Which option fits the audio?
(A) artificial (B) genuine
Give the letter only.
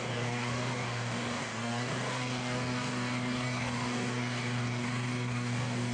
A